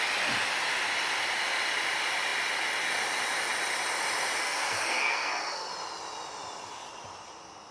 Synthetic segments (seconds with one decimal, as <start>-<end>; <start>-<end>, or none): 4.4-5.7